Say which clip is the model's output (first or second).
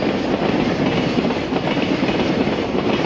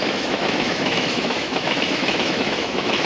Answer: second